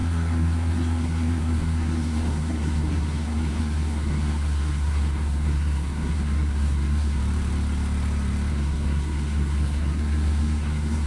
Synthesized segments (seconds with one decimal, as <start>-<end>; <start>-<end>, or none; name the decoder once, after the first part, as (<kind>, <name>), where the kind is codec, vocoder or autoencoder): 0.0-7.2 (codec, SNAC); 8.5-11.1